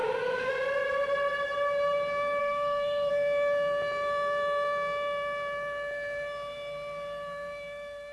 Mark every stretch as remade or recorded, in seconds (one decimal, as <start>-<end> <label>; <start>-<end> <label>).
0.0-0.5 remade; 0.5-2.4 recorded; 2.4-3.1 remade; 3.1-8.1 recorded